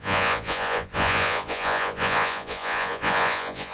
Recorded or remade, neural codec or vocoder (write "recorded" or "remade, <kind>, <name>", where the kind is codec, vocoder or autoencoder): remade, vocoder, Vocos